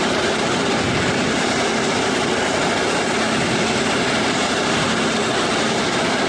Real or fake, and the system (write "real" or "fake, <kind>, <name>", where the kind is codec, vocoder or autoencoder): real